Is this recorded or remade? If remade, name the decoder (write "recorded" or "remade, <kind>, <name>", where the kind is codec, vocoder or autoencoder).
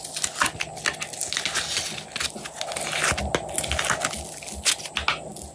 recorded